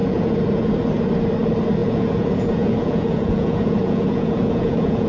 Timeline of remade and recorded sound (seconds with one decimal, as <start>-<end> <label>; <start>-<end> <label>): 0.0-0.7 remade; 0.7-1.8 recorded; 1.8-5.1 remade